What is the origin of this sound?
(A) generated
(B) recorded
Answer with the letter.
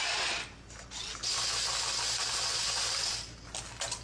B